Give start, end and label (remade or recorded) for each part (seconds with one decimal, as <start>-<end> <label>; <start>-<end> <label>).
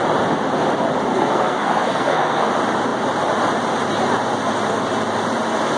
0.0-1.1 recorded; 1.1-2.5 remade; 2.5-5.8 recorded